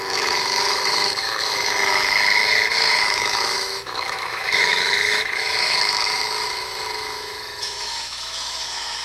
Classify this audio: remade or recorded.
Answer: remade